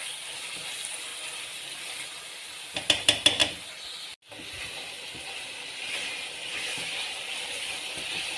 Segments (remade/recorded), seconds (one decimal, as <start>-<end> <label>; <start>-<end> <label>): 0.0-8.4 recorded